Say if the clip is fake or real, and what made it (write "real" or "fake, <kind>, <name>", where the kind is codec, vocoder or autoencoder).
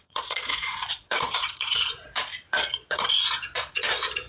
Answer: fake, vocoder, Vocos